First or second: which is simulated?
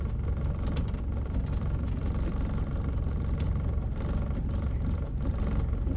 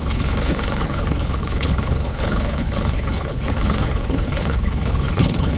second